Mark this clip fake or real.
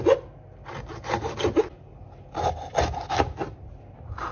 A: real